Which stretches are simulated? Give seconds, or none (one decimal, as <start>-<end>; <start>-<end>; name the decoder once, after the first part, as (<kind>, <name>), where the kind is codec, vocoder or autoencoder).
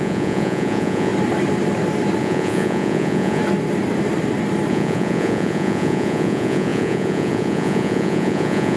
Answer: 0.0-1.1 (vocoder, Vocos); 2.2-3.4; 4.7-8.8